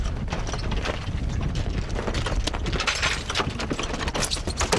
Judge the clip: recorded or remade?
recorded